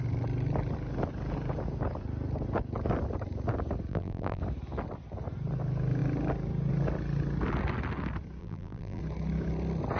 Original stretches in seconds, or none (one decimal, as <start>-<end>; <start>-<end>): 0.0-3.9; 4.4-8.4; 9.0-10.0